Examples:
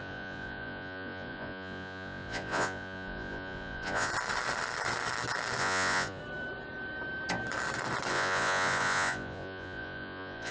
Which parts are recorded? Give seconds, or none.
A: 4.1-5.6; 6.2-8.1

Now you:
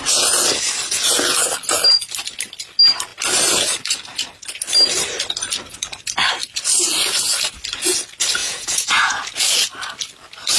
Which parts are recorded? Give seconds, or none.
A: 0.0-8.4; 9.2-10.6

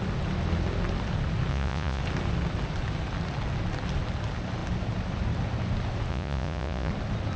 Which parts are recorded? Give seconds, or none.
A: 0.0-1.5; 2.0-6.1; 6.9-7.4

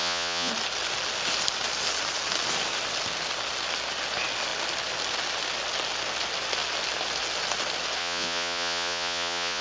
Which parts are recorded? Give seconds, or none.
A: 0.5-8.0

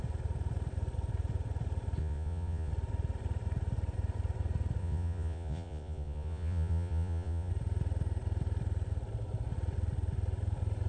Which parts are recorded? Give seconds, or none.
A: 0.0-2.0; 2.7-4.8; 7.5-10.9